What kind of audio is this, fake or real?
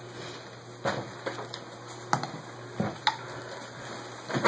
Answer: real